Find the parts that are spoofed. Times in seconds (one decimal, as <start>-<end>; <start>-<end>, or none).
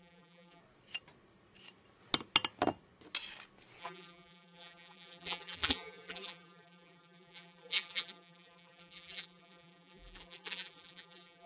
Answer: 0.0-0.6; 3.8-11.5